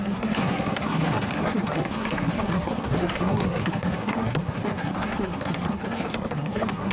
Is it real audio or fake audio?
fake